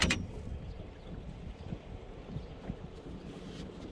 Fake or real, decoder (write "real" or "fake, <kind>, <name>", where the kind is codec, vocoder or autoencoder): real